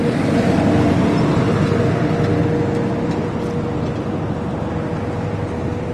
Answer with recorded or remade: recorded